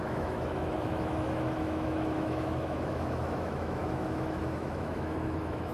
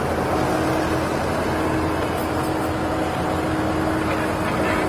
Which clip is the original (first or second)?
second